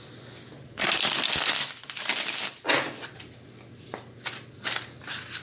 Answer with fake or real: real